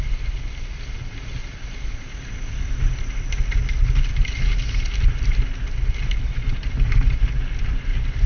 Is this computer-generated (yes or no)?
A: no